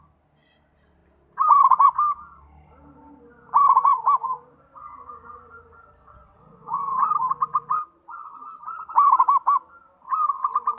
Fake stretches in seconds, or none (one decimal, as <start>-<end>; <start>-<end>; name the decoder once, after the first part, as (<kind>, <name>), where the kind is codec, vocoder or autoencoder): 6.0-7.1 (vocoder, WaveNeXt)